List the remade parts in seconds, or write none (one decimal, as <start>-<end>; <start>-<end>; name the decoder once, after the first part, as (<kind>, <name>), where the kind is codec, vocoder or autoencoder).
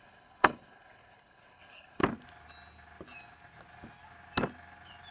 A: 0.0-2.0 (codec, HILCodec)